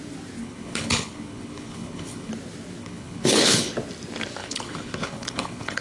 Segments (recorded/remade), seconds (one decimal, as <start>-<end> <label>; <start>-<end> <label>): 0.0-0.4 recorded; 0.4-2.3 remade; 2.3-2.8 recorded; 2.8-3.7 remade; 3.7-4.4 recorded; 4.4-5.8 remade